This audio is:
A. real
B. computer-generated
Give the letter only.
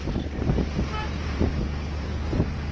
A